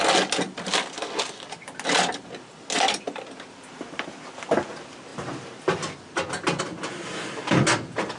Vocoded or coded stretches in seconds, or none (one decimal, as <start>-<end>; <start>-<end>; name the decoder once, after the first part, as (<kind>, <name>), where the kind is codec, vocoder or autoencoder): none